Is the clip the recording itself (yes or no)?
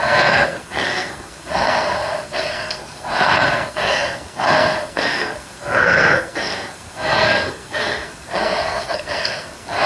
no